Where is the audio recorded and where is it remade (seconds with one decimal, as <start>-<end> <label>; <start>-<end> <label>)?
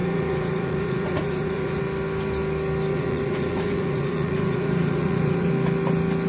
0.0-1.8 remade; 1.8-2.9 recorded; 2.9-5.5 remade; 5.5-6.3 recorded